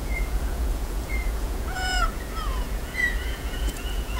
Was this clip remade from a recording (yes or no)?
yes